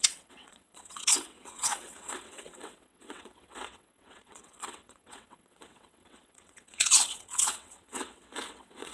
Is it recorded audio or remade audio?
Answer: remade